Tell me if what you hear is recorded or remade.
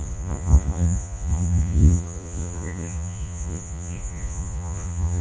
remade